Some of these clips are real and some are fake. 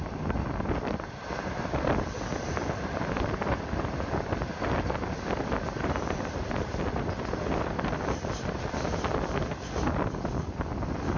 real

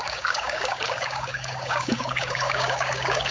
fake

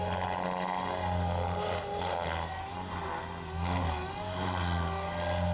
real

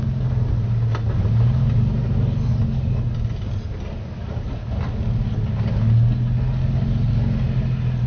real